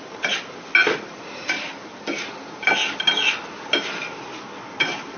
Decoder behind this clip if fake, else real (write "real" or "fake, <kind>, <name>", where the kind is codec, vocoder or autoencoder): real